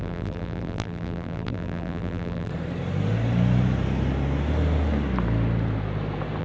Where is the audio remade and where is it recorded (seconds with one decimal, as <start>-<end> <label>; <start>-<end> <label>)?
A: 0.0-2.5 remade; 2.5-6.4 recorded

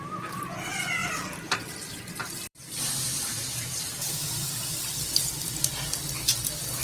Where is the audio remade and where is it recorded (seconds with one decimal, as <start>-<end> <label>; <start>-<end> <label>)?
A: 0.0-1.0 recorded; 1.0-5.1 remade; 5.1-6.8 recorded

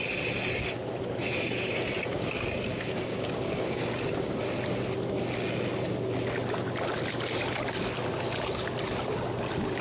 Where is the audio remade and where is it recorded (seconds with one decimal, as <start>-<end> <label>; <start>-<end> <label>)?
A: 0.0-2.7 recorded; 2.7-4.4 remade; 4.4-9.8 recorded

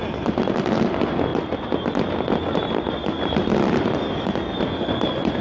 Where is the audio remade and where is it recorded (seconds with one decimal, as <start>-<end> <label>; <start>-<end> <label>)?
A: 0.0-5.4 recorded

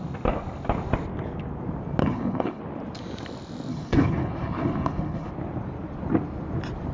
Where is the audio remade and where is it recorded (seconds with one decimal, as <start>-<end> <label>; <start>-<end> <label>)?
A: 0.0-2.0 recorded; 2.0-2.6 remade; 2.6-3.7 recorded; 3.7-5.3 remade; 5.3-6.9 recorded